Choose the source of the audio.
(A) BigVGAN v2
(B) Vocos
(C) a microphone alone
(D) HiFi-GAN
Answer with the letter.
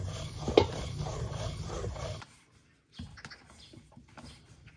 C